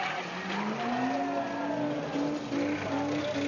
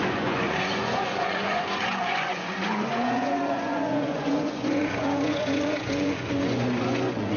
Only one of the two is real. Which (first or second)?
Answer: first